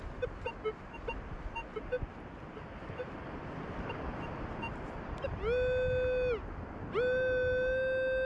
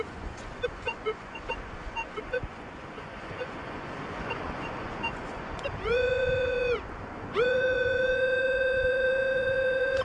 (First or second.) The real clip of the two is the first